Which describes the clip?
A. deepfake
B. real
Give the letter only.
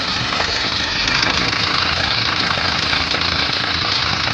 A